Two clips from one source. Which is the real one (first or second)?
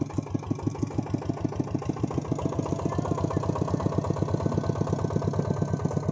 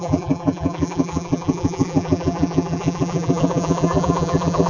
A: first